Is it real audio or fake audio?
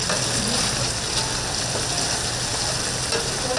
real